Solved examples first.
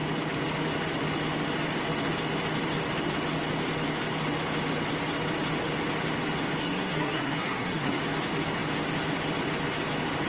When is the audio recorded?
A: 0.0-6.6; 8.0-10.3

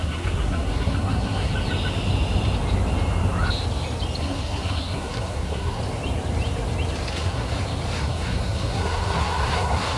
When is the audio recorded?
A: 1.5-4.2; 5.8-7.1; 7.5-8.0

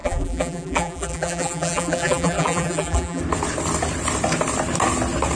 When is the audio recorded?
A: 3.2-5.3